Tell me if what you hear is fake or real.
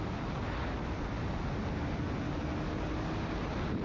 real